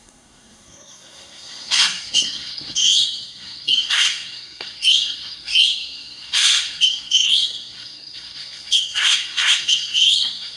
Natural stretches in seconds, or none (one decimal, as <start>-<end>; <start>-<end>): none